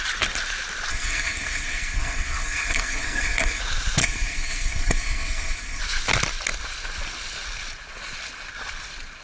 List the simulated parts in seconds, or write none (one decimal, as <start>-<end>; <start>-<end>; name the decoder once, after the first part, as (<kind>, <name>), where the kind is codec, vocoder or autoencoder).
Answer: 0.9-3.6 (codec, SNAC); 4.0-5.8